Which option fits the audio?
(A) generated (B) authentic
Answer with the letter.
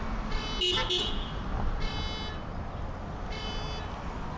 B